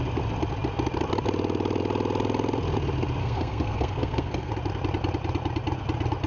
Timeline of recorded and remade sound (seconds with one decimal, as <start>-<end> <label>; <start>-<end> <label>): 0.0-3.2 recorded; 3.2-4.5 remade; 4.5-6.3 recorded